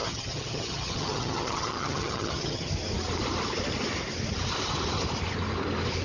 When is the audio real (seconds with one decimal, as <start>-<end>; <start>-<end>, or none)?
2.7-6.0